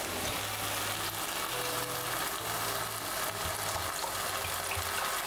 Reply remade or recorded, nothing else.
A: recorded